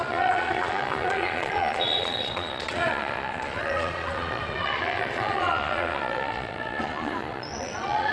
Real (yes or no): no